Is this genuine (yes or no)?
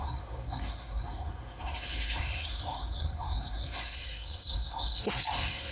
no